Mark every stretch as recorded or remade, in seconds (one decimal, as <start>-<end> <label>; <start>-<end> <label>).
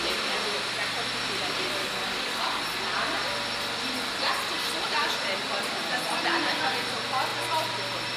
0.0-1.8 recorded; 1.8-2.6 remade; 2.6-8.2 recorded